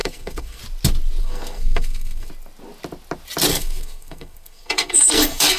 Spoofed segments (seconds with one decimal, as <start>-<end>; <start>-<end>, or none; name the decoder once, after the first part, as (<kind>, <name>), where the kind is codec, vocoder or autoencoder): 0.0-0.6 (codec, SNAC); 1.2-2.3; 3.5-5.6